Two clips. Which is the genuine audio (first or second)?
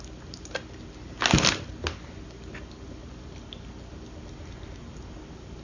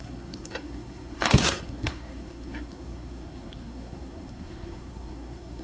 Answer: first